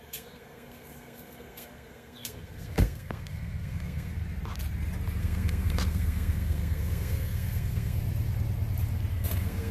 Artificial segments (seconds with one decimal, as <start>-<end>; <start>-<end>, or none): 0.0-4.2; 5.2-8.0; 9.1-9.7